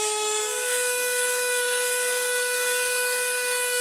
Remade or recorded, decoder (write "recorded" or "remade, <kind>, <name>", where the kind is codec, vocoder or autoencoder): remade, codec, DAC